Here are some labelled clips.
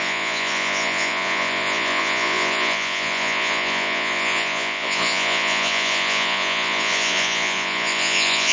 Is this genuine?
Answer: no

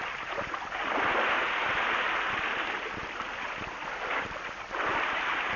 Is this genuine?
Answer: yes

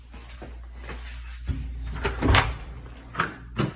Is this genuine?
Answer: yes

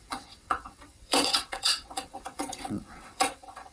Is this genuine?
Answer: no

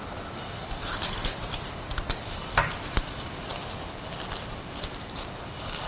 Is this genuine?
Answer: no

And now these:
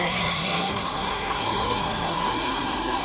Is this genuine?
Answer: no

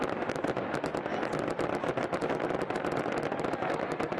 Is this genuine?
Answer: yes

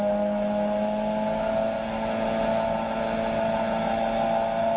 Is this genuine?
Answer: yes